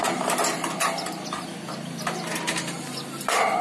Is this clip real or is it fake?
real